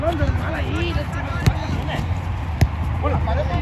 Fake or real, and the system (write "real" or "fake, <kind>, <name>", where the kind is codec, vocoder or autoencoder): real